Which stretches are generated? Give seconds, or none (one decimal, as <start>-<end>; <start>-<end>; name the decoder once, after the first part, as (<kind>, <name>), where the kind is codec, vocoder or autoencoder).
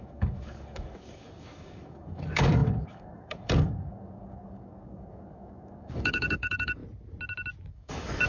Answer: 0.0-6.8 (codec, DAC); 7.7-8.3